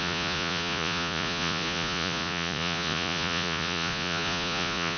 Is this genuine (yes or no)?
no